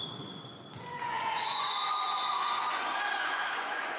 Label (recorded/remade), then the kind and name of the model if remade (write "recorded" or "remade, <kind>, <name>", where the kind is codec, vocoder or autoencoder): remade, vocoder, Vocos